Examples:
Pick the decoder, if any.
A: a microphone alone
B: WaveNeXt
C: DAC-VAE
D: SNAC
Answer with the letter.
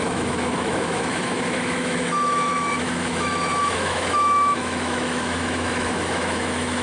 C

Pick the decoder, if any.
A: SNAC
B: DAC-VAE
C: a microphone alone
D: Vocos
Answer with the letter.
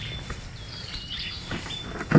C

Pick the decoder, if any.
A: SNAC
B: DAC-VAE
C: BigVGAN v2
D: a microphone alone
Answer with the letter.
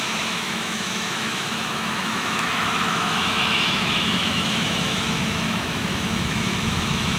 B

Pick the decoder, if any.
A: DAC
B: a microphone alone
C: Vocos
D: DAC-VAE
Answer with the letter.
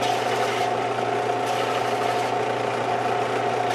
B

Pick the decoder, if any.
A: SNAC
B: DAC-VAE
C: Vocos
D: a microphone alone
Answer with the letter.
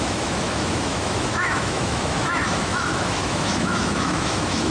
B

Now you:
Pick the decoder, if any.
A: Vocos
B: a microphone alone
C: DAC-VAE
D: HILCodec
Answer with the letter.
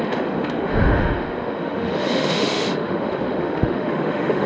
C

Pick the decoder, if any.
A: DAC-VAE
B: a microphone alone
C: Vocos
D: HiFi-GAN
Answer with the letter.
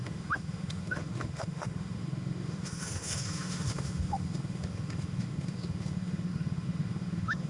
A